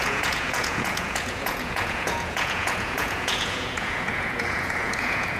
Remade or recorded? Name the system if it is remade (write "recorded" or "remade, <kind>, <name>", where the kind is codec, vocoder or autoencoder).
remade, vocoder, Vocos